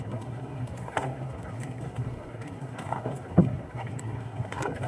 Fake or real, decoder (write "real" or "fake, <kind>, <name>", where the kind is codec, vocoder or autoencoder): fake, codec, SNAC